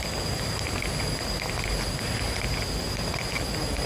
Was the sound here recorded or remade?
recorded